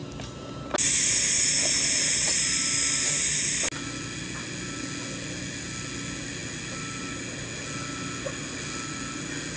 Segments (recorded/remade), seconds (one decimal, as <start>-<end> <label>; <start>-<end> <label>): 0.0-9.6 recorded